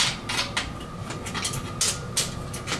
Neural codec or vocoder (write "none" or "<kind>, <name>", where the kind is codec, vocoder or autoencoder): none